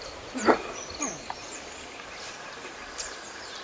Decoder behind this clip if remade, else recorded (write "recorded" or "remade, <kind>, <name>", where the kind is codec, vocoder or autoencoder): remade, vocoder, BigVGAN v2